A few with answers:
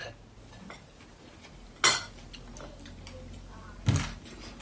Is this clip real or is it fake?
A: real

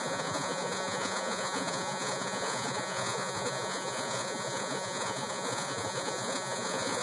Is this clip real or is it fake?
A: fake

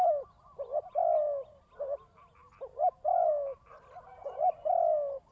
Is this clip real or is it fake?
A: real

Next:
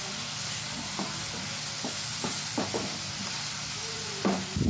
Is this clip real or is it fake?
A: real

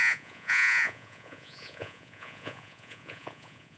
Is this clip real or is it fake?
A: fake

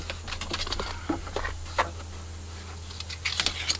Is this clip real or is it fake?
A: real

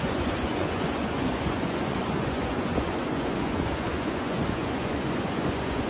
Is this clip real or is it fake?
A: fake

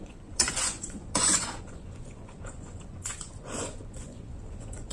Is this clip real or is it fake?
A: fake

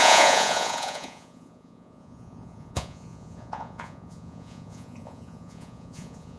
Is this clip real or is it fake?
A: fake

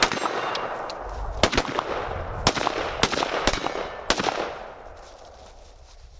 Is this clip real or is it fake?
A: real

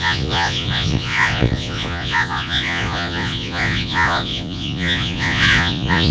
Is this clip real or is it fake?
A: fake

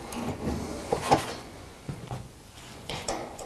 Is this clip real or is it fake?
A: fake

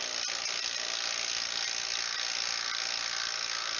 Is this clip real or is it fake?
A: real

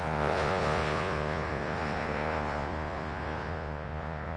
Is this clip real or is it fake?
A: fake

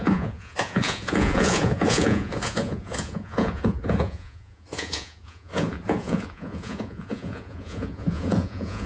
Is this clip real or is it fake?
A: fake